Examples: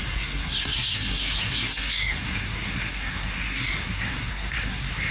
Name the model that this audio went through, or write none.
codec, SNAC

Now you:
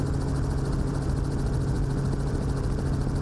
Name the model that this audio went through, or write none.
none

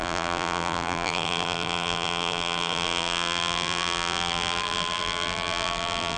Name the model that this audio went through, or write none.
vocoder, BigVGAN v2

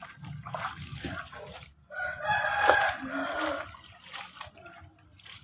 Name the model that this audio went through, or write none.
none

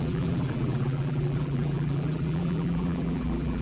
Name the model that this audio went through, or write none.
vocoder, BigVGAN v2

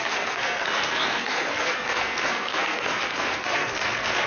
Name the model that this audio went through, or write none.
codec, SNAC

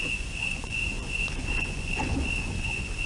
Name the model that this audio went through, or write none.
vocoder, Vocos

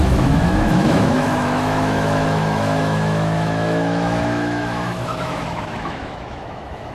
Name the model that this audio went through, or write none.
autoencoder, DAC-VAE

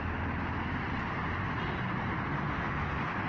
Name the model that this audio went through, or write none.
none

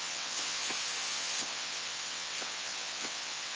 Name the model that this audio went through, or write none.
vocoder, WaveNeXt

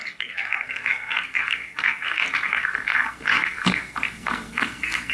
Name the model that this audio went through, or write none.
codec, SNAC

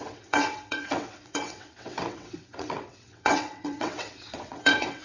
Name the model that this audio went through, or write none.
vocoder, WaveNeXt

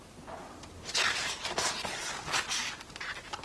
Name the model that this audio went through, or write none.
none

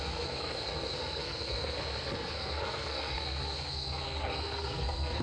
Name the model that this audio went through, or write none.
codec, SNAC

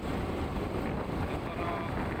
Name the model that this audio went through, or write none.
none